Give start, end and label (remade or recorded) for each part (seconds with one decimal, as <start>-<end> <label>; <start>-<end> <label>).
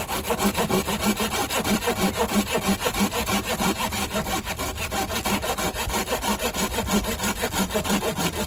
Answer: 0.0-1.4 recorded; 1.4-4.5 remade; 4.5-5.4 recorded; 5.4-8.0 remade; 8.0-8.5 recorded